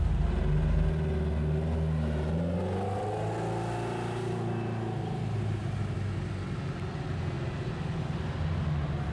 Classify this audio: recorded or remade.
recorded